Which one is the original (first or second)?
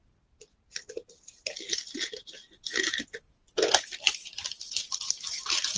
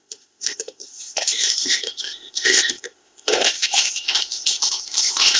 first